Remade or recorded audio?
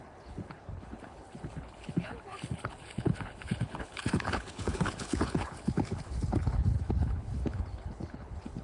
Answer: remade